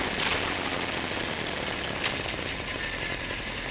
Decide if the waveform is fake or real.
real